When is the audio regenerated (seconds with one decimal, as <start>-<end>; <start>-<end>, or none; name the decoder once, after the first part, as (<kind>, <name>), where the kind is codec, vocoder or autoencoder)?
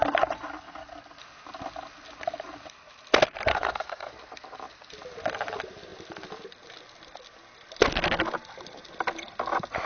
3.5-4.1 (codec, SNAC)